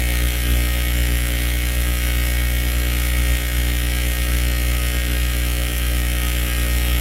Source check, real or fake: fake